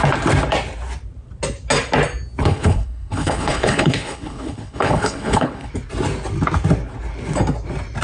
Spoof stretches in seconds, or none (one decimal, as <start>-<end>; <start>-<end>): 2.4-5.7